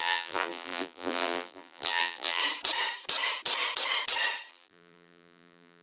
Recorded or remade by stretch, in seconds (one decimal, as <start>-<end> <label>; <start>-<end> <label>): 0.0-2.4 remade; 2.4-4.5 recorded; 4.5-5.8 remade